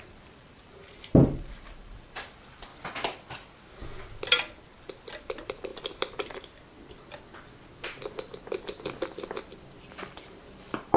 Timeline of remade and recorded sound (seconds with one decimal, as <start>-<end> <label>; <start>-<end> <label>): 0.0-2.7 remade; 2.7-5.1 recorded; 5.1-5.7 remade; 5.7-9.8 recorded; 9.8-11.0 remade